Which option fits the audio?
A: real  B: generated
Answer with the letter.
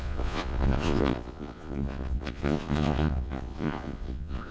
B